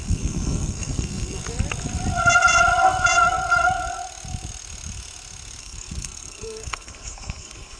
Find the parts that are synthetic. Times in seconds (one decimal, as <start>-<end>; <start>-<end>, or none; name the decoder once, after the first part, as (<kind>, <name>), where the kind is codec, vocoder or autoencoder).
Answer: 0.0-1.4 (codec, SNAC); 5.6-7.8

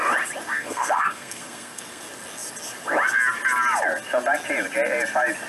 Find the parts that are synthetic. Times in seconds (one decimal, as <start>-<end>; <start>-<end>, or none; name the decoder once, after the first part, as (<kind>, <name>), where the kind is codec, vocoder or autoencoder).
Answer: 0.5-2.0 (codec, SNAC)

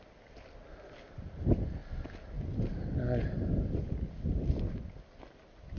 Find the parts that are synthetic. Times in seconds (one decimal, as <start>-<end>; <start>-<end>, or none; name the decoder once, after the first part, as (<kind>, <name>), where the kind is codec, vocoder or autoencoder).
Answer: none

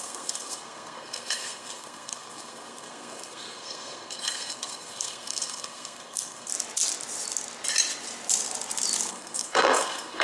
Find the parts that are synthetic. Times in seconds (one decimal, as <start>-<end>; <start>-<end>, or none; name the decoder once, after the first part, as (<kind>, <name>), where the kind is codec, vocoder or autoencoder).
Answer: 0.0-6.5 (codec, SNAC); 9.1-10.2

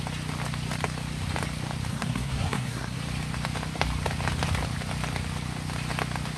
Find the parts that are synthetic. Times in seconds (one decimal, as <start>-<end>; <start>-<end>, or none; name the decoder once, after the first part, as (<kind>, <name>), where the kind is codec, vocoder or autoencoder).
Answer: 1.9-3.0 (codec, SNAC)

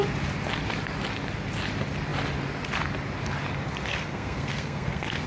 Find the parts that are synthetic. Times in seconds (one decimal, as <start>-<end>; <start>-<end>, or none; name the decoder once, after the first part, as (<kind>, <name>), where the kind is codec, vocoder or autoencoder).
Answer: 3.9-5.3 (codec, SNAC)